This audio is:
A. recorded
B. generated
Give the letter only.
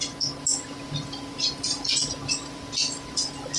A